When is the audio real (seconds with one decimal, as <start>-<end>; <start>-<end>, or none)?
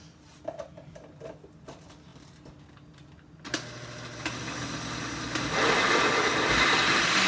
0.0-7.3